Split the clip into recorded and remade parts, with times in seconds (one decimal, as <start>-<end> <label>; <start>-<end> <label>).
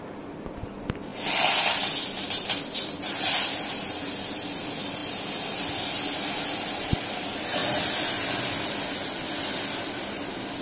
0.0-10.6 recorded